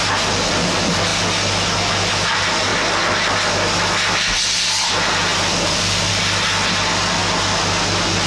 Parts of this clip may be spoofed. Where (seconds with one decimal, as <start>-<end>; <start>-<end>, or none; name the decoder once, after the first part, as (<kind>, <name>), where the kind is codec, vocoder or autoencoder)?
2.7-4.4 (vocoder, BigVGAN v2); 5.3-6.1; 7.2-8.3